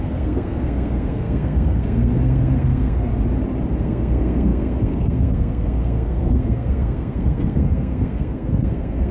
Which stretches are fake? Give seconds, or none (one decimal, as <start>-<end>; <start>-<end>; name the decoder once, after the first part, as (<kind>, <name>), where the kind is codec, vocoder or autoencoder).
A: 0.0-3.1 (codec, SNAC); 3.8-9.1